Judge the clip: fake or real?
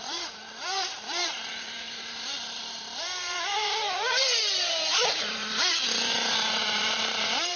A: fake